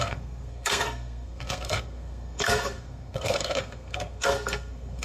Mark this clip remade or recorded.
remade